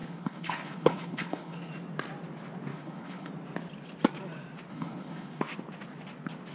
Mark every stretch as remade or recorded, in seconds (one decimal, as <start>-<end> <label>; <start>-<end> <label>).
0.0-1.7 remade; 1.7-2.7 recorded; 2.7-3.3 remade; 3.3-4.7 recorded; 4.7-5.4 remade; 5.4-6.5 recorded